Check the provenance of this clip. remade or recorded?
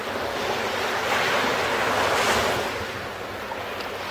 recorded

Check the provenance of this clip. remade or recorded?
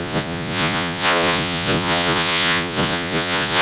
remade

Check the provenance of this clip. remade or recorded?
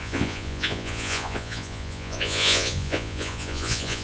remade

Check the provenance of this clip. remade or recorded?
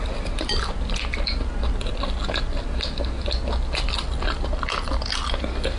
recorded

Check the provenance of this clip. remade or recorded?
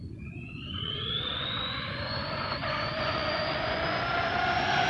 remade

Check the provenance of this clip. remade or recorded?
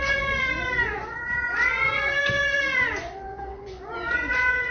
remade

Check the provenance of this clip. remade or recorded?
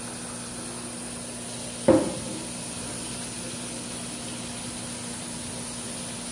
recorded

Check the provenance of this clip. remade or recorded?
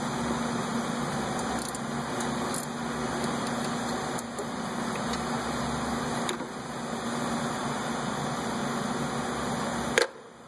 recorded